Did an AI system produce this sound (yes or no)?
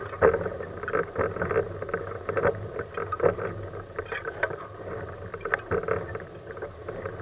no